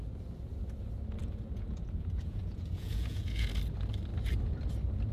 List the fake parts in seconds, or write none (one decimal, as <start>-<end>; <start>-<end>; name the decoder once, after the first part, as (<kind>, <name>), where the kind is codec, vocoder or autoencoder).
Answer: 1.2-3.5 (vocoder, Vocos)